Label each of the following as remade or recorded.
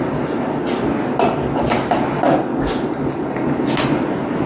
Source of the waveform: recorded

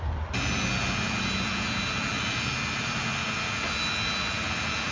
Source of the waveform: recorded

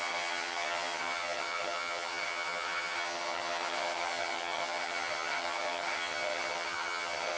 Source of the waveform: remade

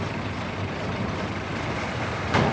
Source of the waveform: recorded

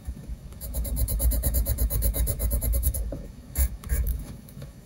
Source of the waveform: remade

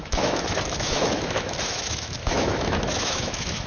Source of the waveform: remade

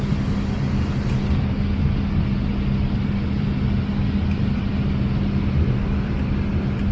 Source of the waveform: recorded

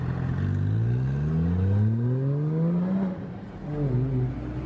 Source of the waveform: recorded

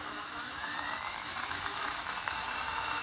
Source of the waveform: remade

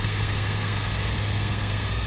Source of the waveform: remade